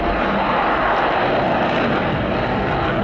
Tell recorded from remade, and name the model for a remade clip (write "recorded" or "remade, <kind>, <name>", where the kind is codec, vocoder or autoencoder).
recorded